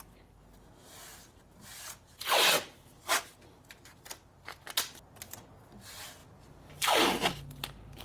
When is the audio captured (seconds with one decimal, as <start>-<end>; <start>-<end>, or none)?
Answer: 0.0-1.7; 3.2-8.0

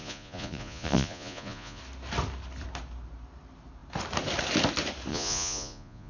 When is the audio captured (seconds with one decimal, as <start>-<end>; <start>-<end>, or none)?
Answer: 1.8-5.1

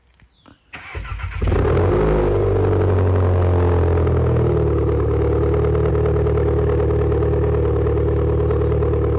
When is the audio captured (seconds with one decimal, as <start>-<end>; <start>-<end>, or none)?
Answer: 0.0-9.2

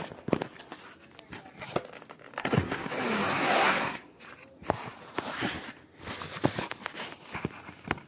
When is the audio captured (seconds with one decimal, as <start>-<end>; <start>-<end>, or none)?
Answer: 0.0-2.4; 2.9-3.3; 4.2-8.1

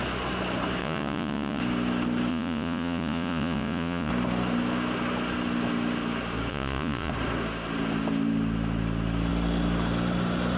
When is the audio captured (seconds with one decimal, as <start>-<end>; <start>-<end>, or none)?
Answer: 0.0-0.8; 1.6-2.3; 4.1-6.5; 7.1-10.6